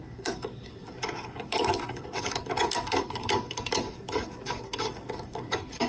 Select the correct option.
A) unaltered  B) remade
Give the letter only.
B